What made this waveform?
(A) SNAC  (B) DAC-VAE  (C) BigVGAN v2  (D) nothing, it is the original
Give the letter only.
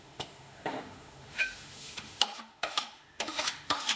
B